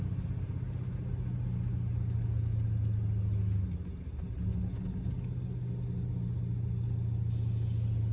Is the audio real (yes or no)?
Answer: yes